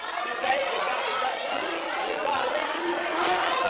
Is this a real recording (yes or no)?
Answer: no